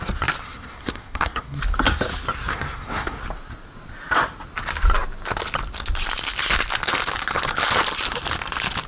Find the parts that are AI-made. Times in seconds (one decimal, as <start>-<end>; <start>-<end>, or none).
0.4-1.6; 2.5-3.2